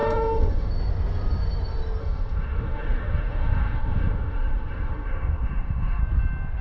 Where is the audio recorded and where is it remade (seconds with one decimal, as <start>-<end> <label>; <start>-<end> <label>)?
0.0-0.7 remade; 0.7-2.0 recorded; 2.0-6.0 remade; 6.0-6.6 recorded